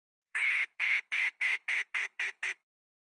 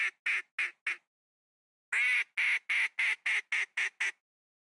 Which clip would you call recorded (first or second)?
second